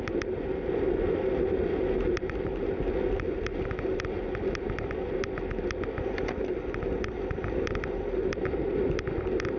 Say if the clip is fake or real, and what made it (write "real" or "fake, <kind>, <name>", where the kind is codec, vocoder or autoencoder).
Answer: real